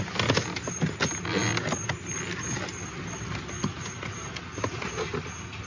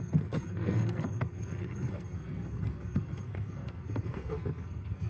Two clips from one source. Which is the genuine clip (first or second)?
first